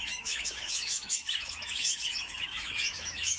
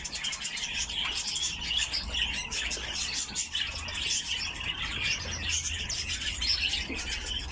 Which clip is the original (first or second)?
second